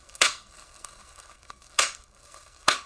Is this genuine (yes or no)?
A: no